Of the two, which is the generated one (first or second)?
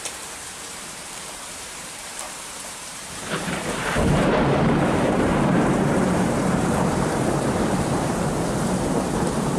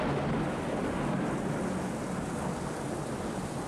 first